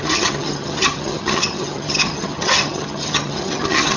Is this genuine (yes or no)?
no